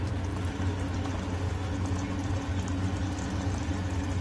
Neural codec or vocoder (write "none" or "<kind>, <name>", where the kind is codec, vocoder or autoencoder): none